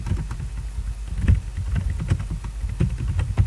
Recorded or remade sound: recorded